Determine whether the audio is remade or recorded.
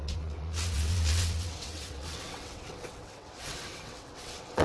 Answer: remade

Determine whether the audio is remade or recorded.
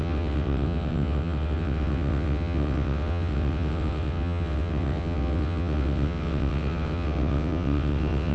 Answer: remade